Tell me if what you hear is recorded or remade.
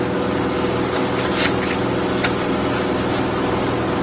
recorded